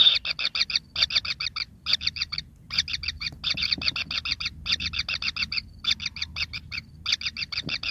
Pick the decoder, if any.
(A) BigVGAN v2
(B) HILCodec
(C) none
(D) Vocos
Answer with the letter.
C